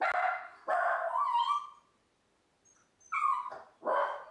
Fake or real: real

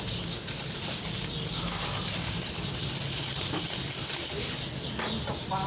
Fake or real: real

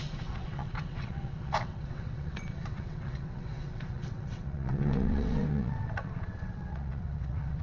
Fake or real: fake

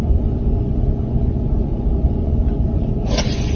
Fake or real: fake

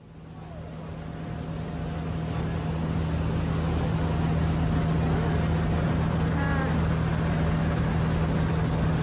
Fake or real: real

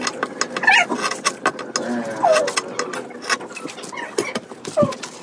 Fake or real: real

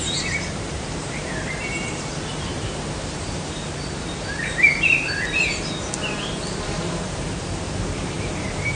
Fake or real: fake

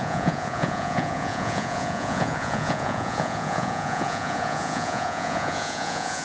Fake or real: fake